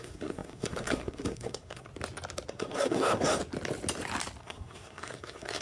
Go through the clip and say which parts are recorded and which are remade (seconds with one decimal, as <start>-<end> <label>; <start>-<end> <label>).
0.0-1.9 remade; 1.9-2.5 recorded; 2.5-3.4 remade; 3.4-4.4 recorded; 4.4-5.6 remade